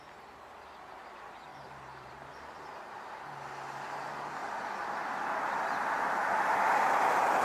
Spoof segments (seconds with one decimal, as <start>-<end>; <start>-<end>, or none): 1.5-2.3